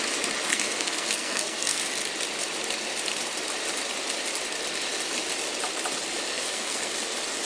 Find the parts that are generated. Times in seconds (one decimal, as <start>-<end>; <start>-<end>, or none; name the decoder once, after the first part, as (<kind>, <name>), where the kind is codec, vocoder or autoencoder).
0.5-1.8 (codec, SNAC); 6.3-6.9